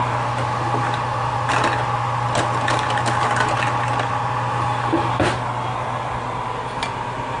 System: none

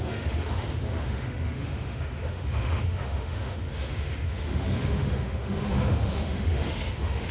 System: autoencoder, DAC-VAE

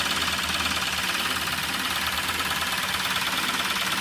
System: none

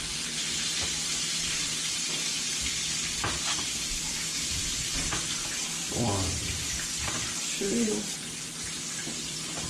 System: vocoder, BigVGAN v2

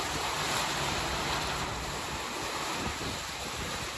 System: none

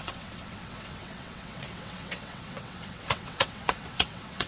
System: vocoder, WaveNeXt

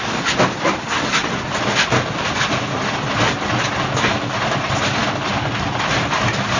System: none